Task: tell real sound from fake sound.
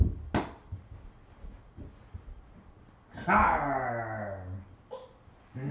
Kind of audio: real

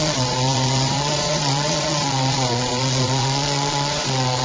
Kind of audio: fake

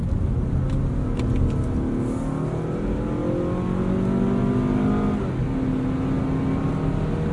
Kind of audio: real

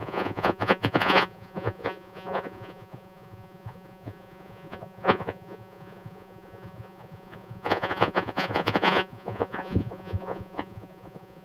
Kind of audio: fake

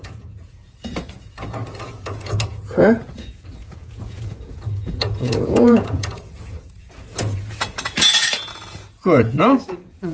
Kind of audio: fake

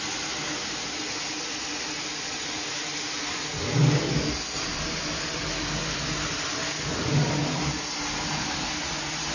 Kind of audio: real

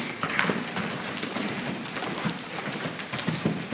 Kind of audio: real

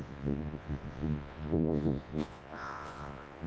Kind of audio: fake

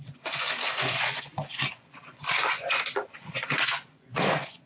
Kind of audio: fake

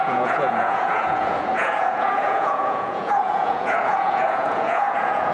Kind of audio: fake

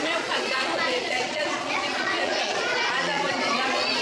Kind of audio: fake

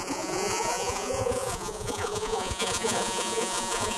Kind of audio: fake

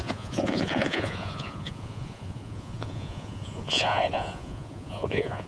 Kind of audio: fake